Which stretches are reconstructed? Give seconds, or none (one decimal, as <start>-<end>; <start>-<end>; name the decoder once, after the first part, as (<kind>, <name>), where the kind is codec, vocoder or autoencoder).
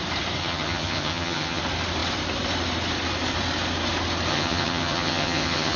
0.4-1.6 (vocoder, HiFi-GAN); 4.3-5.8